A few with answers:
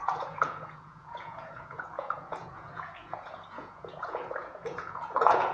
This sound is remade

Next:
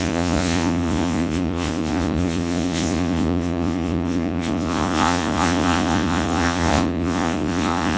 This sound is remade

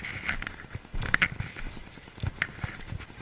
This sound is recorded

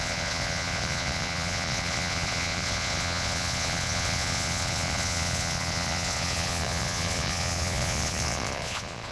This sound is remade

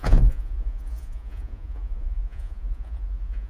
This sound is remade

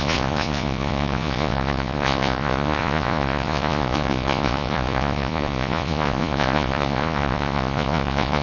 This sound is remade